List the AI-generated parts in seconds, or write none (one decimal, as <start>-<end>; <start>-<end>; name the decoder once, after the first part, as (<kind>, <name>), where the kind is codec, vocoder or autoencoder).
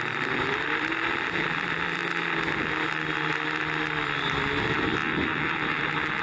0.0-2.0 (vocoder, BigVGAN v2); 4.4-6.2